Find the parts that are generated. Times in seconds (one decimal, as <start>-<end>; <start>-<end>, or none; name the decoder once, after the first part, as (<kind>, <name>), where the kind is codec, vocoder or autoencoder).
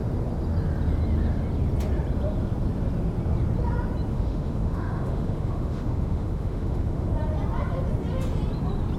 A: 4.1-7.1 (autoencoder, DAC-VAE)